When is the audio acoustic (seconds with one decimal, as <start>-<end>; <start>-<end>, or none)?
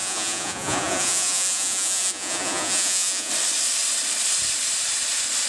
3.3-5.5